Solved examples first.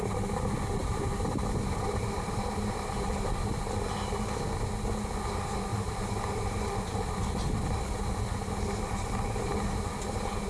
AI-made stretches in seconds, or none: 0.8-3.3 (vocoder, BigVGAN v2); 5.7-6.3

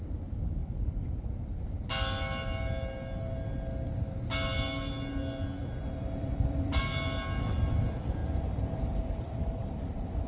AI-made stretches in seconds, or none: 5.6-6.8 (vocoder, BigVGAN v2); 8.2-10.3

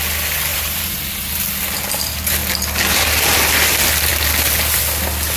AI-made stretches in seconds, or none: 0.5-1.0 (vocoder, BigVGAN v2)

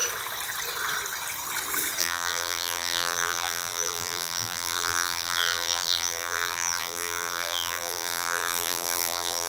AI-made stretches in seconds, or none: 2.0-9.5 (vocoder, BigVGAN v2)

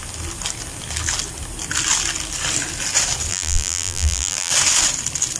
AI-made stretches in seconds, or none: 3.3-4.5 (vocoder, BigVGAN v2)

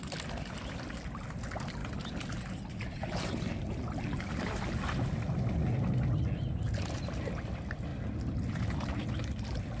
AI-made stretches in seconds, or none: none

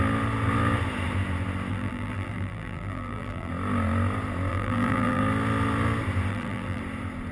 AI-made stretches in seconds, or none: 1.7-3.5 (vocoder, BigVGAN v2); 4.5-5.2; 6.3-6.8

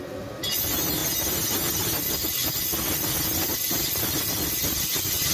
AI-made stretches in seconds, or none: 1.0-2.1 (vocoder, BigVGAN v2)